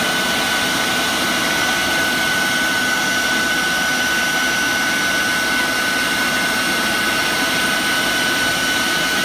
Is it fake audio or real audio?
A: real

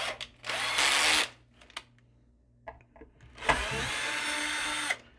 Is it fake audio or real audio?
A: real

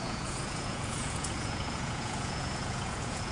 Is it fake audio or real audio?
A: fake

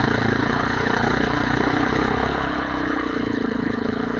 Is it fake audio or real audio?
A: fake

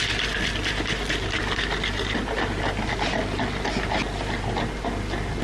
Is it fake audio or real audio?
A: real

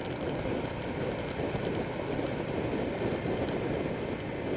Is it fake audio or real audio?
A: real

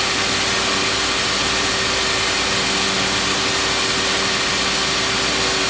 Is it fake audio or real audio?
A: real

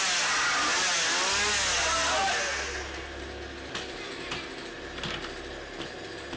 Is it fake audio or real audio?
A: real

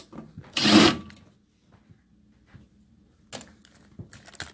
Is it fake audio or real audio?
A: real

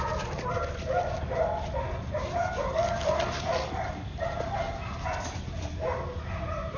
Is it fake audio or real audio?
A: real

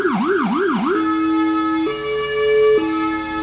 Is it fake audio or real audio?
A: real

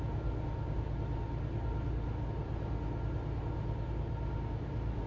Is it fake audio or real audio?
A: real